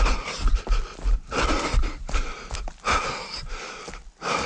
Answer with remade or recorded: recorded